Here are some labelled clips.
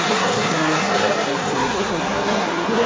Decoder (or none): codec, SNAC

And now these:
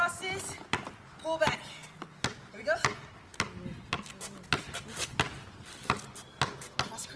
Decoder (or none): none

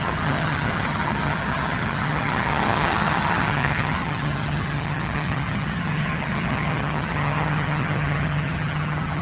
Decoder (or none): vocoder, HiFi-GAN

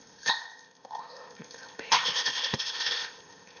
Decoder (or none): codec, ZipCodec